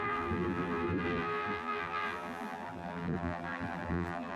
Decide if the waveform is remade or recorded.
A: remade